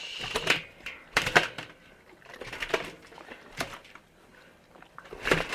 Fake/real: fake